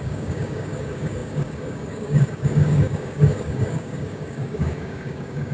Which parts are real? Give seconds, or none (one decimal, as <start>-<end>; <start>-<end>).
none